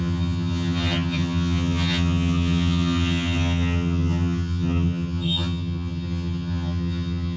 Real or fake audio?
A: fake